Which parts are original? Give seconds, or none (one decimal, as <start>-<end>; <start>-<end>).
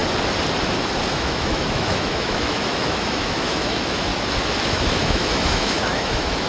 0.0-1.1; 4.1-4.7